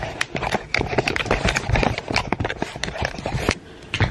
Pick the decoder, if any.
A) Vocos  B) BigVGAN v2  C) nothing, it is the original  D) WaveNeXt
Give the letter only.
C